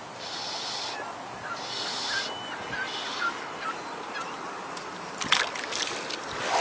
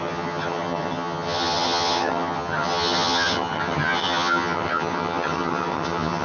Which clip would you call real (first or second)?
first